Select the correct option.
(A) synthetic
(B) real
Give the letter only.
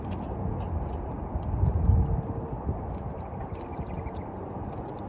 B